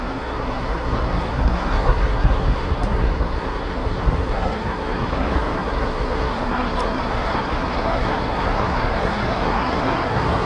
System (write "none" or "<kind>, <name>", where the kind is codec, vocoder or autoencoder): codec, SNAC